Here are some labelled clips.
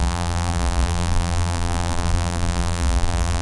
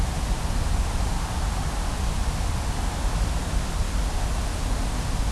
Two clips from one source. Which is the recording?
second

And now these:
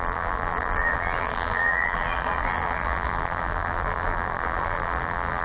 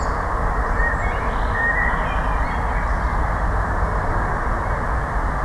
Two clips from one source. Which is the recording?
second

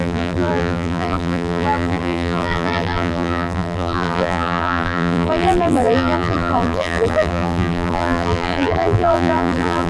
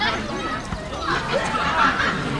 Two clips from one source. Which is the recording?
second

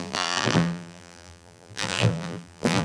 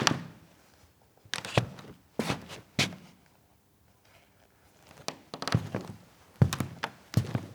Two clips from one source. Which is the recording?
second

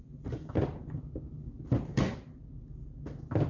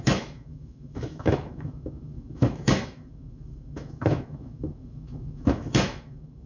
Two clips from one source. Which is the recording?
first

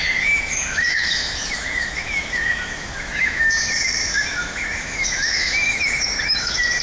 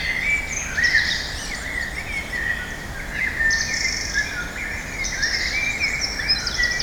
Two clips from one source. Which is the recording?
second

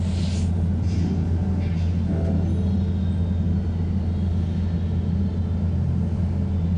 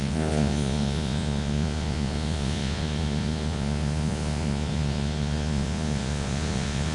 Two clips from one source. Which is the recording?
first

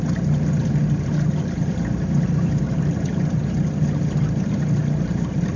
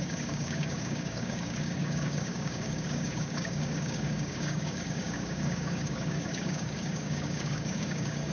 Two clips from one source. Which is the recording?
first